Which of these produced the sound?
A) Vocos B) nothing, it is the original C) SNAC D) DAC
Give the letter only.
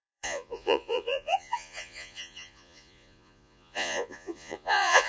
A